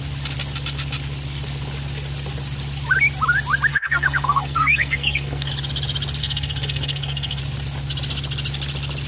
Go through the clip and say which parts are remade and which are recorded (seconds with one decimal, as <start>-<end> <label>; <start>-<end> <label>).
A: 0.0-3.7 recorded; 3.7-5.5 remade; 5.5-6.2 recorded; 6.2-7.4 remade; 7.4-9.1 recorded